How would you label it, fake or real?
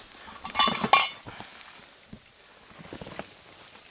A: real